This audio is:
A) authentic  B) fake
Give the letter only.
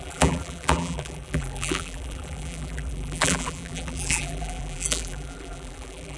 B